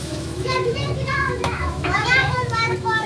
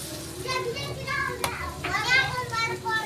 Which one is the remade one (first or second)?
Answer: first